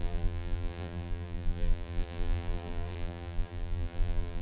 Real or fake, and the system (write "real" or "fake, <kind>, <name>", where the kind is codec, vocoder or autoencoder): fake, vocoder, BigVGAN v2